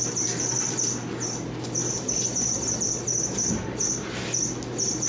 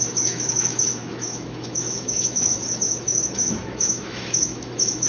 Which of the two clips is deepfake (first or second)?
second